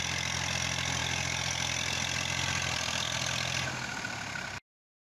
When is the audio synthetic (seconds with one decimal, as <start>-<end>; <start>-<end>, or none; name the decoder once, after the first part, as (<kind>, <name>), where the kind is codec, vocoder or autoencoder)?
none